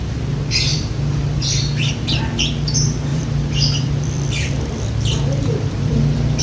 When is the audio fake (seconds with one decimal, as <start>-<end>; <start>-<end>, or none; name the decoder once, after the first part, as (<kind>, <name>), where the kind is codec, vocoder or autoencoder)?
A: 0.7-2.2 (vocoder, BigVGAN v2); 3.1-6.4